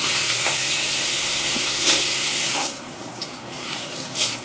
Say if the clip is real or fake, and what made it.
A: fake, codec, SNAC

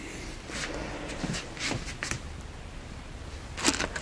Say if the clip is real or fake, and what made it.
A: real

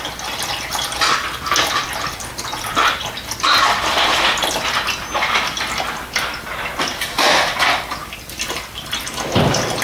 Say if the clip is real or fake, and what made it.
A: real